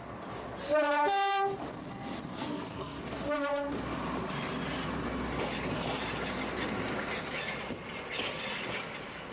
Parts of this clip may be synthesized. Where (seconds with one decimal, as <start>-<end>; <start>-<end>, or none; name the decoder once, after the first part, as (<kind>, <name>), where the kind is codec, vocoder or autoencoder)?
2.3-3.0 (codec, SNAC)